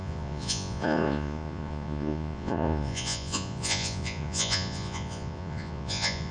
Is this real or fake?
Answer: fake